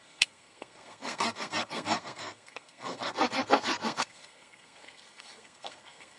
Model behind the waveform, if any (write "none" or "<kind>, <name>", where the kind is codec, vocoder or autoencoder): codec, SNAC